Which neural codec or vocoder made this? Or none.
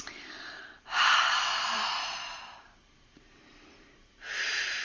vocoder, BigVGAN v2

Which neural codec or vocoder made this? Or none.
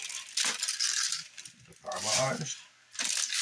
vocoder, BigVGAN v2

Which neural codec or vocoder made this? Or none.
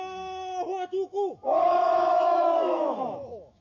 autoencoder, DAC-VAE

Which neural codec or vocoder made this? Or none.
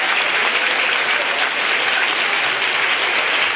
none